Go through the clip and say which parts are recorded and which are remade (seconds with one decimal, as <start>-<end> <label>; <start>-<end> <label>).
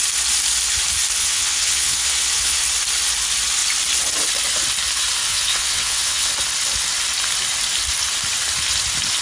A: 0.0-1.2 recorded; 1.2-2.6 remade; 2.6-5.2 recorded; 5.2-6.3 remade; 6.3-9.2 recorded